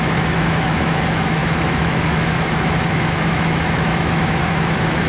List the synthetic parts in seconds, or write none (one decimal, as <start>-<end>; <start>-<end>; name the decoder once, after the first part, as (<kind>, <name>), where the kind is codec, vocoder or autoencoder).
0.0-5.1 (autoencoder, DAC-VAE)

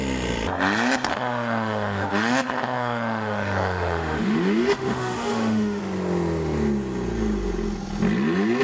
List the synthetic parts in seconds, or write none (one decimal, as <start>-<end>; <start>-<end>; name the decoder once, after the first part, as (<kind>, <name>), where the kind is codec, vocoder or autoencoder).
1.1-5.8 (autoencoder, DAC-VAE)

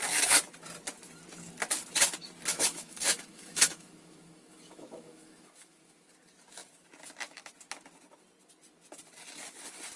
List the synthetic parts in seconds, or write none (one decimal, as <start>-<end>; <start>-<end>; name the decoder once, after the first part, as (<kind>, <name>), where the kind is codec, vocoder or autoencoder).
2.5-6.1 (autoencoder, DAC-VAE)

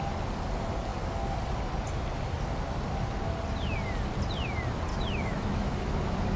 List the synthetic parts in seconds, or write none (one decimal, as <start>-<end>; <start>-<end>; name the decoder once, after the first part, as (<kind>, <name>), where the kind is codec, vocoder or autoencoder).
4.9-6.0 (autoencoder, DAC-VAE)

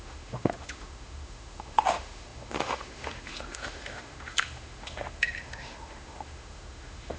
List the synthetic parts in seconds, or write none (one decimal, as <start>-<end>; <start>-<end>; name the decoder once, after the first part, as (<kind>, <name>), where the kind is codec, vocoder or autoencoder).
0.0-7.2 (autoencoder, DAC-VAE)

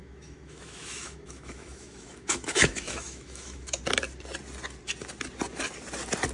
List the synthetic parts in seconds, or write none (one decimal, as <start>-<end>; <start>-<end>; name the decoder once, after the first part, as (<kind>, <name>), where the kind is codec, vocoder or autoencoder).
0.0-3.8 (autoencoder, DAC-VAE)